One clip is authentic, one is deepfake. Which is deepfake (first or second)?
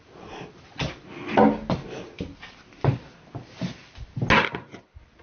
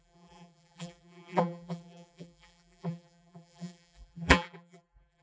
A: second